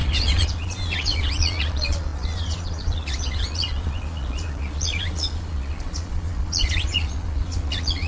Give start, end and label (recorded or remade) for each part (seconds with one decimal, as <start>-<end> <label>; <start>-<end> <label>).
0.0-8.1 remade